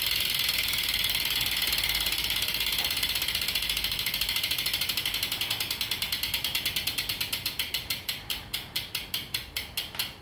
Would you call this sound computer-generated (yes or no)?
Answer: no